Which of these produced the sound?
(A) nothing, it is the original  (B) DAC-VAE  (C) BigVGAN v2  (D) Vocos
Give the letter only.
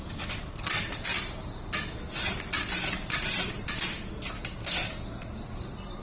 A